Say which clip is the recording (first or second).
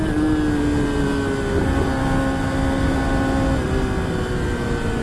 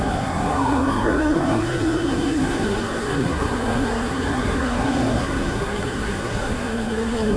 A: first